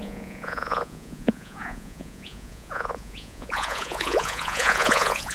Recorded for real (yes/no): no